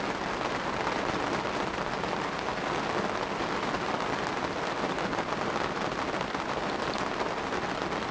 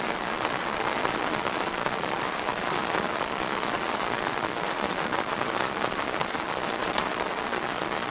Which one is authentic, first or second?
first